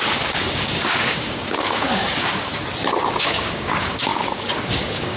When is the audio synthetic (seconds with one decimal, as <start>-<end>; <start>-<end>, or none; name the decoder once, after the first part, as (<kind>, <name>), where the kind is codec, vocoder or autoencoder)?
0.0-2.5 (codec, DAC); 3.2-5.2